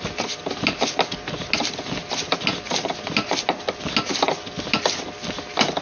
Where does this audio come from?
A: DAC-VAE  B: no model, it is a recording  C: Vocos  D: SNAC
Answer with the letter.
B